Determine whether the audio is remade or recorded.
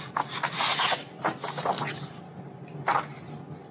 recorded